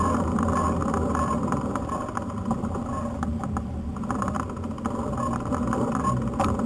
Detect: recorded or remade recorded